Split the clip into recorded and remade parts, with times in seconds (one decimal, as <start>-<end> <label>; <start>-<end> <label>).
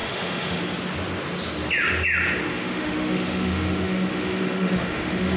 0.0-0.6 remade; 0.6-2.5 recorded; 2.5-5.4 remade